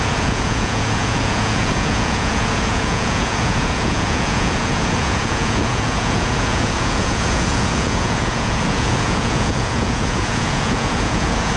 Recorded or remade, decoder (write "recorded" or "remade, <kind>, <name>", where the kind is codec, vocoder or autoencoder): remade, vocoder, Vocos